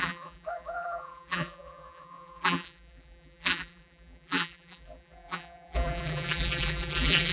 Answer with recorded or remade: remade